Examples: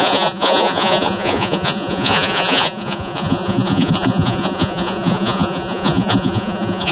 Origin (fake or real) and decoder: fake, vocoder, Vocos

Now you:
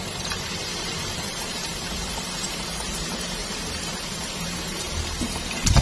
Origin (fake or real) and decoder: fake, vocoder, BigVGAN v2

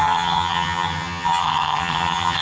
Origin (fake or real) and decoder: fake, vocoder, HiFi-GAN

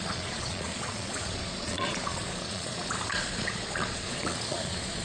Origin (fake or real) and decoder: fake, vocoder, Vocos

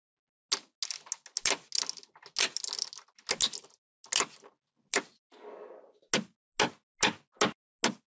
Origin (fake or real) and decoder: real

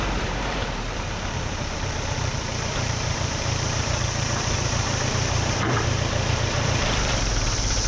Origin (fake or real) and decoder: fake, vocoder, BigVGAN v2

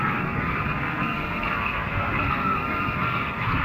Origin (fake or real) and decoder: fake, codec, SNAC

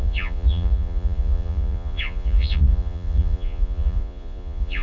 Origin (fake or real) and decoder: fake, vocoder, Vocos